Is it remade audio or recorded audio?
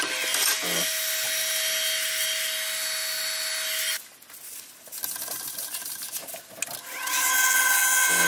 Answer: recorded